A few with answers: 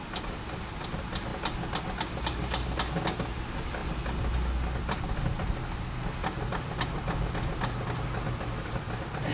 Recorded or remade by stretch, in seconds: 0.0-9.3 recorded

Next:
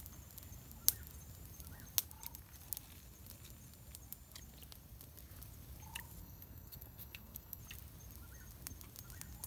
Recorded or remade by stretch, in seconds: 0.0-6.2 recorded; 6.2-7.6 remade; 7.6-9.5 recorded

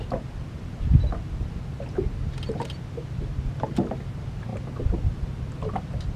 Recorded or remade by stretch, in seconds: 0.0-6.2 recorded

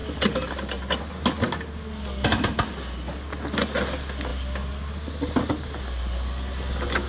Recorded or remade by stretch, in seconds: 0.0-7.1 recorded